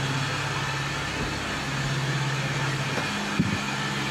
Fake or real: real